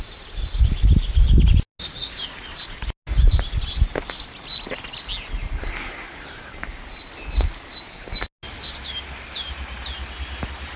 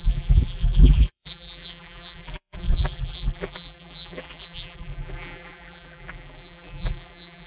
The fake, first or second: second